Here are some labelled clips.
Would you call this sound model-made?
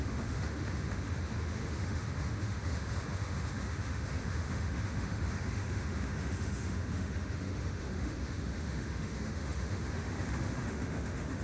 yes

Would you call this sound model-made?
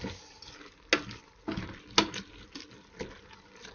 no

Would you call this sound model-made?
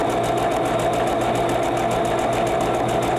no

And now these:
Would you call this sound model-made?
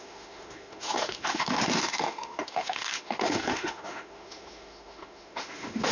yes